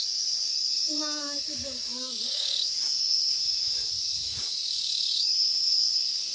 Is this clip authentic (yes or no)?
no